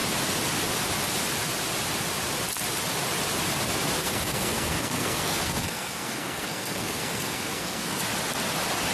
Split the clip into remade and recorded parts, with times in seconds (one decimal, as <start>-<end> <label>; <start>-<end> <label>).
0.0-4.0 recorded; 4.0-8.0 remade; 8.0-8.9 recorded